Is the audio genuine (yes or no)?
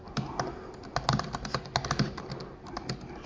yes